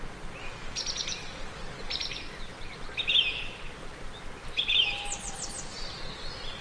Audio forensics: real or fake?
real